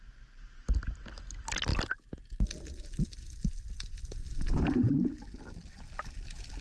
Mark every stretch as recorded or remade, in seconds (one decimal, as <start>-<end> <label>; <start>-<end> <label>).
0.0-4.2 recorded; 4.2-5.2 remade; 5.2-6.6 recorded